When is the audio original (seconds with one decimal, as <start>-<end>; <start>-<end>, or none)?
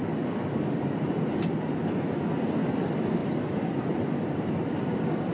2.3-3.2